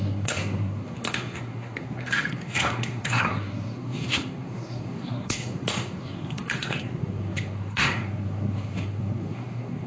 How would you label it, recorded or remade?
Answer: remade